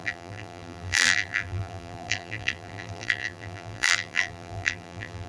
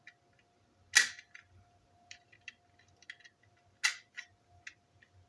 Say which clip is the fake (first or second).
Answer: first